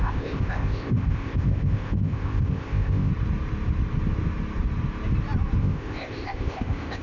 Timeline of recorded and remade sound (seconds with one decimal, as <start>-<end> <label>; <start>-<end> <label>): 0.0-3.1 remade; 3.1-5.6 recorded; 5.6-7.0 remade